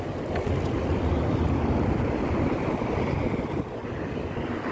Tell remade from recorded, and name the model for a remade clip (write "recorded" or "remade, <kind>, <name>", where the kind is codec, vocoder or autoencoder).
recorded